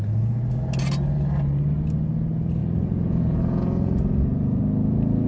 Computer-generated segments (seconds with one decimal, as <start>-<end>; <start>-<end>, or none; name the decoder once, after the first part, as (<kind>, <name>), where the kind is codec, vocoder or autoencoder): 2.6-4.6 (vocoder, Vocos)